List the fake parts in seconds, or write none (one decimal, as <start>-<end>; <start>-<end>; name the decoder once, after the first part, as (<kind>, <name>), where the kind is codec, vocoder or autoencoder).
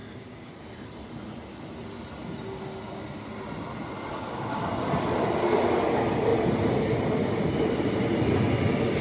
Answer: 0.0-0.5 (codec, DAC); 4.1-4.6